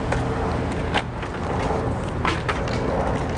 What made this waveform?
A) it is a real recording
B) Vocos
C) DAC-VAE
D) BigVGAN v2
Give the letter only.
A